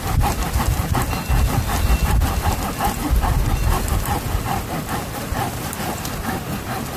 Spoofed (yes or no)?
no